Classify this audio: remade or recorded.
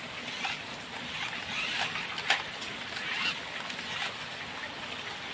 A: recorded